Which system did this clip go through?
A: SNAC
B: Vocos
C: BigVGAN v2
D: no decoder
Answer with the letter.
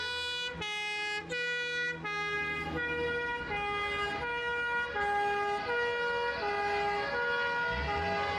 D